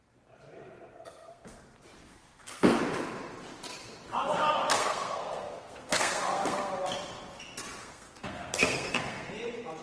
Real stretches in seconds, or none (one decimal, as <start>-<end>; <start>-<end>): 0.0-0.9; 1.6-2.0; 2.8-4.3; 6.7-7.8; 9.3-9.8